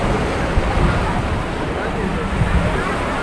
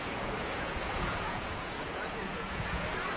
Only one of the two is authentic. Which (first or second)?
first